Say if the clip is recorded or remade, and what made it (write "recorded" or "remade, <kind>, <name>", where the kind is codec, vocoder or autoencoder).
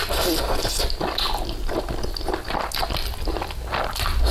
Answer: recorded